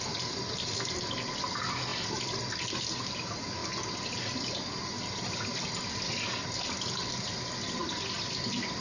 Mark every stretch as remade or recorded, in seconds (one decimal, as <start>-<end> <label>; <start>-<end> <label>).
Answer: 0.0-8.8 recorded